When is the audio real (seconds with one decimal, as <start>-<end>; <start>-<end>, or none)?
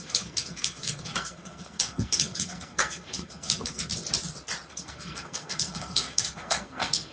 3.9-4.7